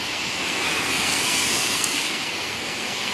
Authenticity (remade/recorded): remade